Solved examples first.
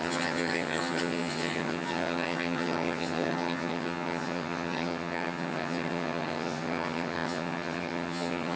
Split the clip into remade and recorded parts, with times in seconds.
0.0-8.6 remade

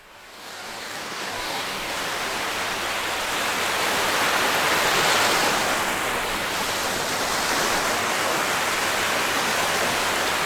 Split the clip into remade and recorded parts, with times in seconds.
0.0-2.0 remade; 2.0-8.0 recorded; 8.0-8.5 remade; 8.5-10.5 recorded

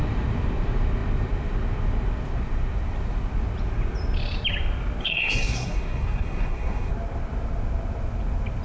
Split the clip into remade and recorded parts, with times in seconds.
0.0-5.0 recorded; 5.0-6.9 remade; 6.9-8.6 recorded

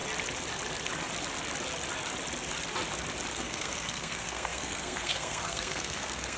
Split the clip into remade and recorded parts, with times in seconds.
0.0-3.3 recorded; 3.3-6.4 remade

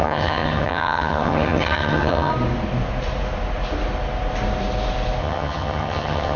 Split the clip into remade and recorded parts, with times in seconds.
0.0-2.3 remade; 2.3-5.2 recorded; 5.2-6.4 remade

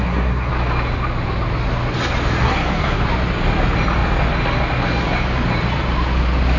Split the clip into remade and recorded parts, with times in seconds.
0.0-0.5 remade; 0.5-2.4 recorded; 2.4-3.0 remade; 3.0-6.6 recorded

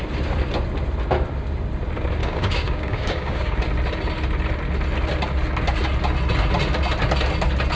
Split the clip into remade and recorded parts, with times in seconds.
0.0-2.2 recorded; 2.2-3.6 remade; 3.6-7.7 recorded

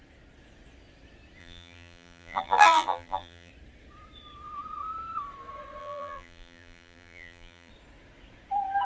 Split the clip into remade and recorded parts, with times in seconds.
0.0-1.4 recorded; 1.4-3.5 remade; 3.5-5.8 recorded; 5.8-7.7 remade; 7.7-8.8 recorded